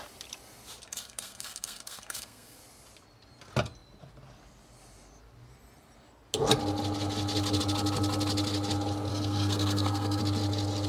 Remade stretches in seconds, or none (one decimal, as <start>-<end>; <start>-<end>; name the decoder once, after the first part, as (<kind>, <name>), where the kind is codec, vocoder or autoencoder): 0.9-2.6 (codec, SNAC); 9.1-10.2